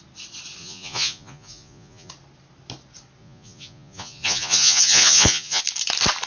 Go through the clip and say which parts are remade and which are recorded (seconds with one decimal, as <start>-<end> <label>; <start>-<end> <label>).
0.0-0.6 recorded; 0.6-2.1 remade; 2.1-3.2 recorded; 3.2-5.6 remade; 5.6-6.3 recorded